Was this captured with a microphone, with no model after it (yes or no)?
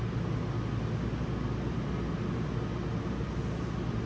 yes